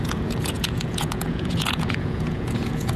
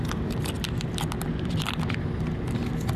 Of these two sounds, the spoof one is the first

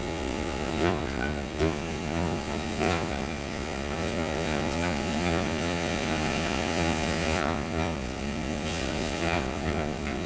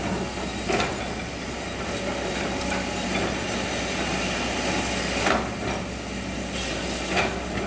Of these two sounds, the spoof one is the first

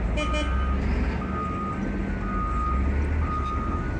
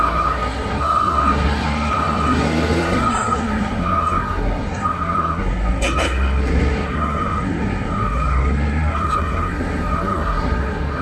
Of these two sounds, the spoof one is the second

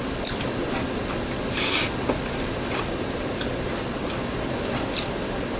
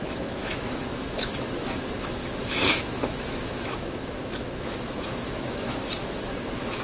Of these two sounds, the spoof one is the second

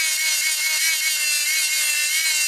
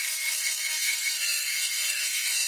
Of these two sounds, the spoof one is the second